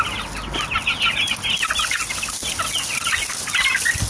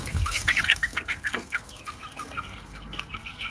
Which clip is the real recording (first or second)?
first